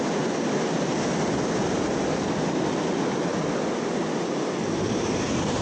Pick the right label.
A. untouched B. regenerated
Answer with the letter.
A